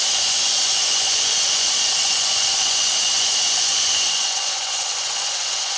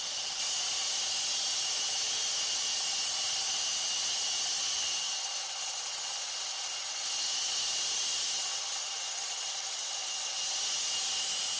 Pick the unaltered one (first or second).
second